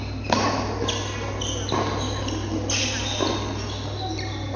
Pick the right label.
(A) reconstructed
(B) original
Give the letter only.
B